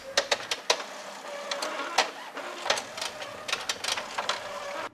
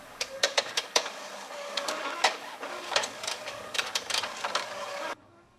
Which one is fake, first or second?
second